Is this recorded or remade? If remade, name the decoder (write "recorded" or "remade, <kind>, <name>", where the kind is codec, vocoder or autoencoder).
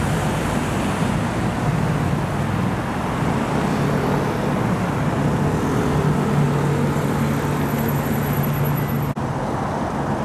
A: recorded